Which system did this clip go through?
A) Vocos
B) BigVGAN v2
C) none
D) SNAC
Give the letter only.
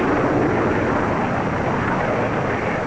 C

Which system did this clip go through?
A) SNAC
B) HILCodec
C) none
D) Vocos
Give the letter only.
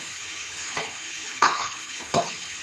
B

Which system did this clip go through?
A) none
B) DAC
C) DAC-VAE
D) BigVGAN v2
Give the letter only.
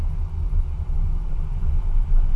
D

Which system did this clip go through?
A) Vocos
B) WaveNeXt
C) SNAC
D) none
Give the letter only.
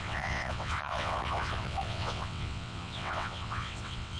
B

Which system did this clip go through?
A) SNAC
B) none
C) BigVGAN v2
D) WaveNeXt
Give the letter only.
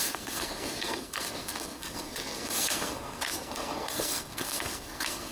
A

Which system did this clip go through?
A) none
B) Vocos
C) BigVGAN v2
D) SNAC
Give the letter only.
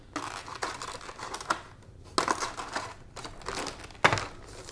A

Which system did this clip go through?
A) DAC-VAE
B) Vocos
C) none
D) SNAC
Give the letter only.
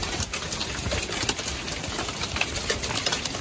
C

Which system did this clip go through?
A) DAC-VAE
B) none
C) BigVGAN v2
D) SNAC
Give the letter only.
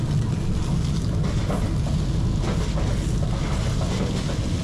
B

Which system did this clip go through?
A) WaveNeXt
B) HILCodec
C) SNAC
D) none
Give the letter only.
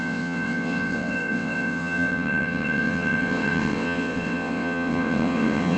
A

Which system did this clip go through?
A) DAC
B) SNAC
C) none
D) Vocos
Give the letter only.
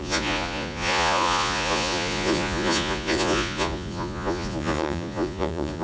D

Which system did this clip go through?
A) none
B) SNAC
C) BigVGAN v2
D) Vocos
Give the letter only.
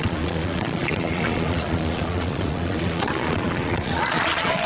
D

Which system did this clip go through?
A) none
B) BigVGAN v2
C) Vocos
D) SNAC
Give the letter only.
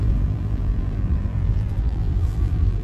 B